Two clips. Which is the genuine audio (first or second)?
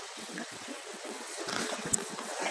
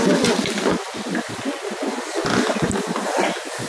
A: second